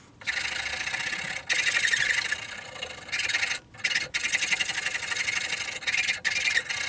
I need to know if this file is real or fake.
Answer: real